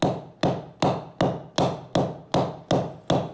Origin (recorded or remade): recorded